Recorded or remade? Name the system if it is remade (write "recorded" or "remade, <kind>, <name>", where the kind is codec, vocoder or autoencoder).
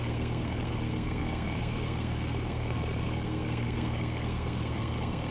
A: remade, codec, SNAC